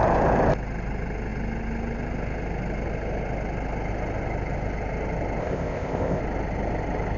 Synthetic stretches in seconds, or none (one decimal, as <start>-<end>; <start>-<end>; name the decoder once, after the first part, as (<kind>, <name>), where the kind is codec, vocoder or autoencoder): 5.4-6.2 (codec, ZipCodec)